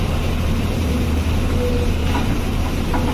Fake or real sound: fake